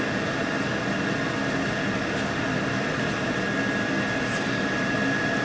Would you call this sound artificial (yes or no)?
yes